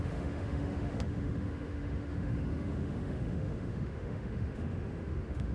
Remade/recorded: remade